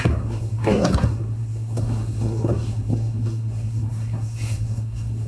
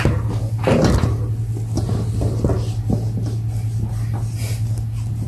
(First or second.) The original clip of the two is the second